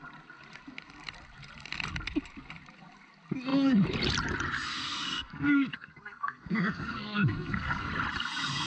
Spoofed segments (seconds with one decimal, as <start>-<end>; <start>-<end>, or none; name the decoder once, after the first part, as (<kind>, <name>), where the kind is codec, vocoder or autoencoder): 4.7-7.9 (codec, SNAC)